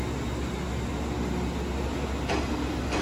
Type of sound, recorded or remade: recorded